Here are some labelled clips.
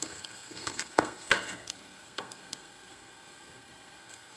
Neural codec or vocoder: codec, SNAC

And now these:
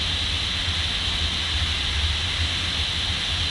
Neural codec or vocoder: none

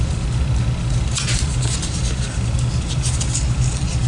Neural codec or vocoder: none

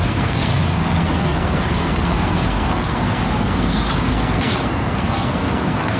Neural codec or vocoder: codec, SNAC